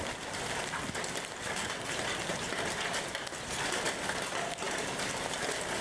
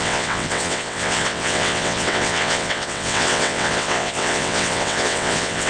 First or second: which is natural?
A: first